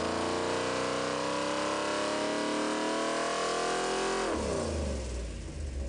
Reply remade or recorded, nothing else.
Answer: recorded